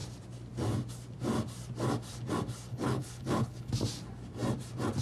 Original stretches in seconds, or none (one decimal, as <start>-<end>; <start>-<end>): 0.0-2.7; 3.7-5.0